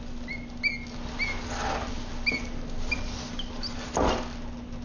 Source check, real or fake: real